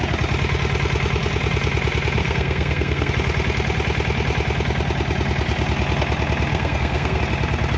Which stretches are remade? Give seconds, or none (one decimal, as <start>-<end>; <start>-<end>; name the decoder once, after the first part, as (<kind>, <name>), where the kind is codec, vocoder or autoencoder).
2.2-3.1 (codec, SNAC); 6.5-7.2